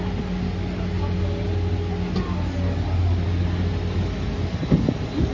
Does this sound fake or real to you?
real